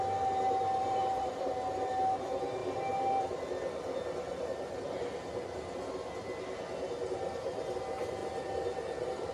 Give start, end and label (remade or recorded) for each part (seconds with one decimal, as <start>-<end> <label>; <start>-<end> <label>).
0.0-0.8 recorded; 0.8-1.3 remade; 1.3-9.3 recorded